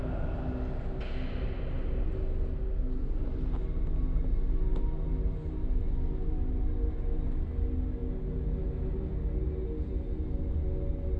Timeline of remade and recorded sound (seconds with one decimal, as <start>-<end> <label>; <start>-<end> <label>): 0.0-11.2 recorded